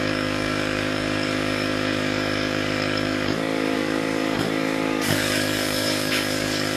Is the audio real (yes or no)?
no